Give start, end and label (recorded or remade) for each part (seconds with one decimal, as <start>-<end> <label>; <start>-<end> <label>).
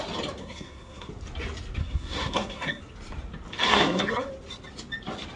0.0-0.4 recorded; 0.4-1.1 remade; 1.1-1.8 recorded; 1.8-2.8 remade; 2.8-3.7 recorded; 3.7-4.3 remade; 4.3-5.4 recorded